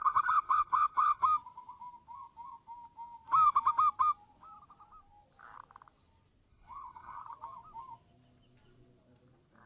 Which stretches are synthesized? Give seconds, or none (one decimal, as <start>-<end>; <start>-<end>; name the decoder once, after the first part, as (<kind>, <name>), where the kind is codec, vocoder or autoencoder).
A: 0.0-1.2 (codec, HILCodec); 6.5-7.2